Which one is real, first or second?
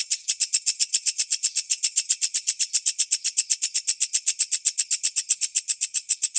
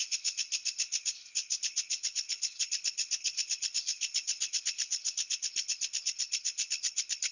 first